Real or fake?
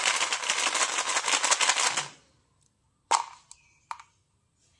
real